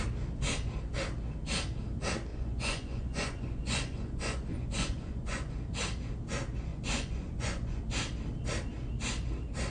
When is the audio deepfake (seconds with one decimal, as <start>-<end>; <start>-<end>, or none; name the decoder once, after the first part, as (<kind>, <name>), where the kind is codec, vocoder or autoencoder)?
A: 2.3-5.5 (vocoder, Vocos); 6.7-7.8

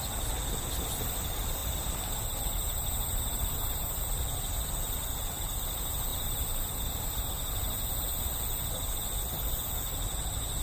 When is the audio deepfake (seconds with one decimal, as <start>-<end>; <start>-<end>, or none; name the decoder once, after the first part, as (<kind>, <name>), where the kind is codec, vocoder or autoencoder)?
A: 1.6-4.2 (vocoder, BigVGAN v2); 6.1-7.3

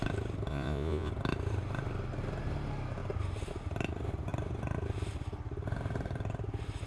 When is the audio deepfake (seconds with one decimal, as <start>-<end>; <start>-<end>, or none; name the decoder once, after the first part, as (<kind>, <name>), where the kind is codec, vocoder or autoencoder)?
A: 0.5-1.1 (vocoder, Vocos)

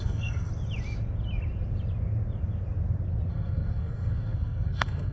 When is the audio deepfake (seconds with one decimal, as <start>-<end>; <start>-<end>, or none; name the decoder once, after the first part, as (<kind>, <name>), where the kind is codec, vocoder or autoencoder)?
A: 0.0-0.5 (codec, SNAC); 3.3-5.1